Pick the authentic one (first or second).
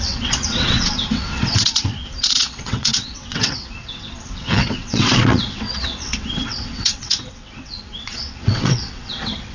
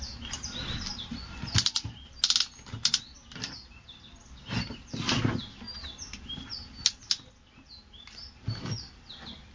second